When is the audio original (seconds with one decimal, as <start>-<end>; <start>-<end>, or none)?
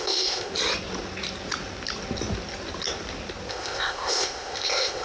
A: 0.5-3.5